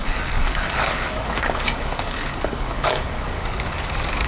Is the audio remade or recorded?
remade